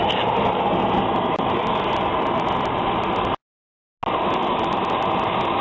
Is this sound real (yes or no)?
yes